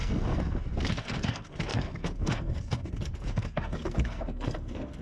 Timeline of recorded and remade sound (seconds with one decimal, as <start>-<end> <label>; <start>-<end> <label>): 0.0-5.0 remade